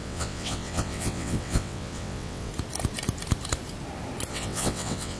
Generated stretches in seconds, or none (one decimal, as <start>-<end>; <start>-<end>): 0.0-2.5; 4.3-5.2